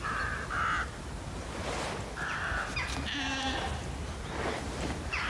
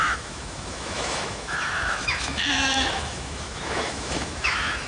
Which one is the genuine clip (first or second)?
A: first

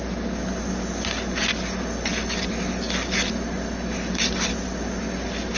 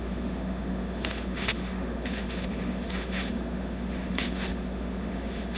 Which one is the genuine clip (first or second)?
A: first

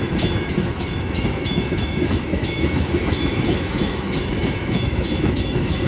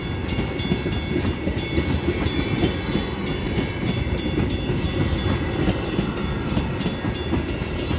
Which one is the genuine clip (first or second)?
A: second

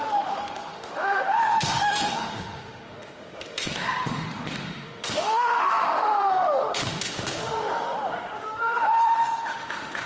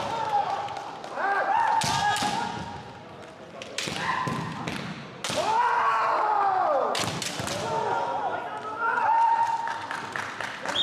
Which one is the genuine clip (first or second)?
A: second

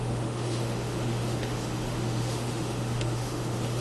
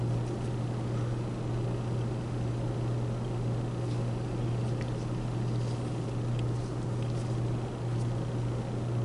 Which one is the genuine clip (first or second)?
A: second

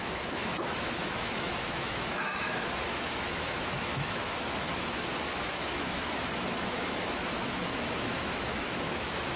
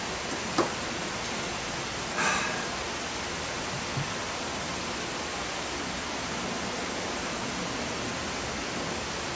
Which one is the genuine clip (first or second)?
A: second